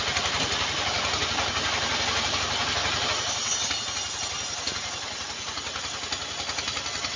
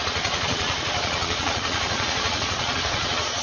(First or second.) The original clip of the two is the first